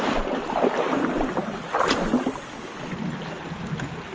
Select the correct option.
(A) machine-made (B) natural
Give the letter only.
B